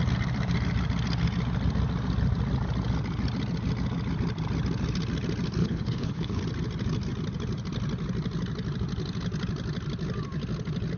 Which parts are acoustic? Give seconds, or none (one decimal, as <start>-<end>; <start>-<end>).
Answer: 0.0-5.6; 6.4-11.0